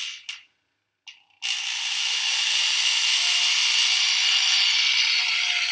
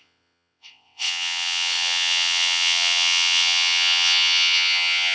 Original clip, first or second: first